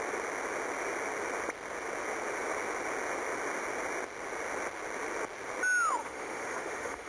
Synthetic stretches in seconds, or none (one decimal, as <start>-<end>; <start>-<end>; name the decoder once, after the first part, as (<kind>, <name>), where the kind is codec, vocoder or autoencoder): 6.0-7.1 (autoencoder, DAC-VAE)